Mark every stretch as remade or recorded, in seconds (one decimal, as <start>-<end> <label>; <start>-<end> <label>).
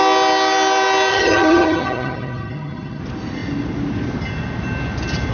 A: 0.0-1.1 recorded; 1.1-3.0 remade; 3.0-5.3 recorded